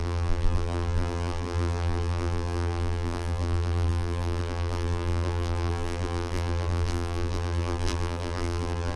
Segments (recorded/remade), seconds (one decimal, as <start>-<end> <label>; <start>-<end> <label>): 0.0-9.0 remade

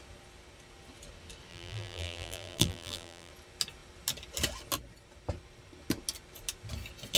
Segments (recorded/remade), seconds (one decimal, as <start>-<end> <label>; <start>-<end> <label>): 0.0-1.5 recorded; 1.5-3.3 remade; 3.3-7.2 recorded

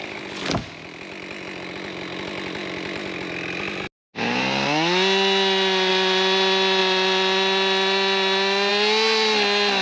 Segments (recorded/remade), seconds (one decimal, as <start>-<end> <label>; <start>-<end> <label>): 0.0-9.8 recorded